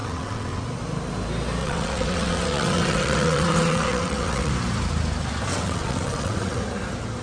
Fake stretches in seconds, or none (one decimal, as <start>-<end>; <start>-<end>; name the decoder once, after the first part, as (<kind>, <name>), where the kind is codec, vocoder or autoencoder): 0.0-0.6 (vocoder, WaveNeXt); 1.6-4.5; 5.5-6.6